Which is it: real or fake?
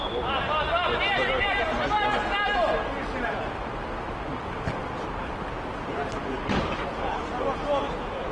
real